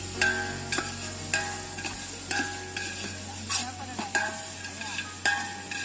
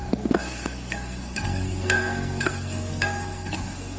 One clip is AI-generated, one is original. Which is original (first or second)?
first